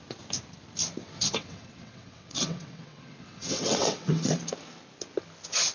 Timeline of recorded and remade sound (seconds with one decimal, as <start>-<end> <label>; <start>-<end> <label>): 0.0-1.0 recorded; 1.0-4.4 remade; 4.4-5.7 recorded